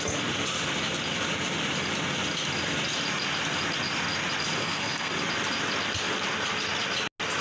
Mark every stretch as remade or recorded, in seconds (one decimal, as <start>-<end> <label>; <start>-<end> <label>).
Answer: 0.0-4.6 recorded; 4.6-5.1 remade; 5.1-7.4 recorded